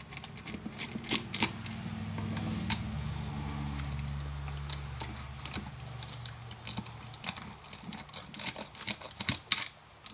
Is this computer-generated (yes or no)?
no